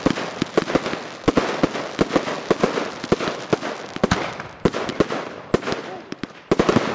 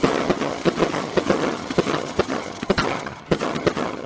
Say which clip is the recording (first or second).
first